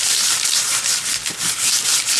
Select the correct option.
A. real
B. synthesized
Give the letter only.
A